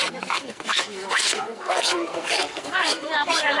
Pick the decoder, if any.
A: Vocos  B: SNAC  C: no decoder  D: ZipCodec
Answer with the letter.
B